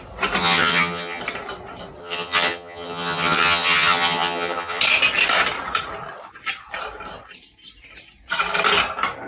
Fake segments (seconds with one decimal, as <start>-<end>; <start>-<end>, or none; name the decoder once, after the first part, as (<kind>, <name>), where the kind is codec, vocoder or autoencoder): 0.4-1.2 (vocoder, HiFi-GAN); 2.0-4.8